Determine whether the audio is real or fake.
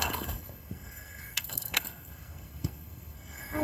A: fake